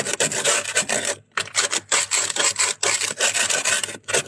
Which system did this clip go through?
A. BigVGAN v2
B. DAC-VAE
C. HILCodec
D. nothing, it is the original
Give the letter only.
D